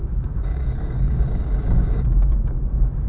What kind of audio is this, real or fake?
fake